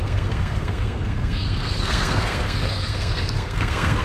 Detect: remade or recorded remade